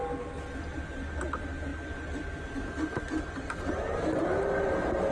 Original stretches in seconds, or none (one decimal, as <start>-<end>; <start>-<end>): 0.0-5.1